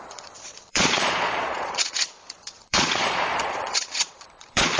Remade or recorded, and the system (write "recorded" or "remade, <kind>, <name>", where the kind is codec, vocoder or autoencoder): remade, vocoder, Vocos